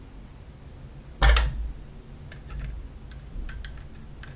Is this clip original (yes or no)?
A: yes